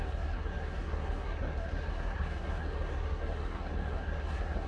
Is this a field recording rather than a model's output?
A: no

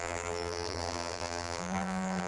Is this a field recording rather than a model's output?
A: no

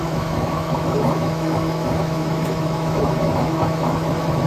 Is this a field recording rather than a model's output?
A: no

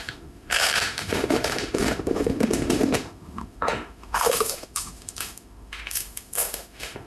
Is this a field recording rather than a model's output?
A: no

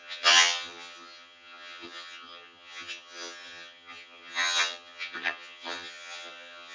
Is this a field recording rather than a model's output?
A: no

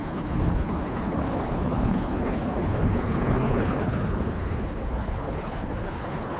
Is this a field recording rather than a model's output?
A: no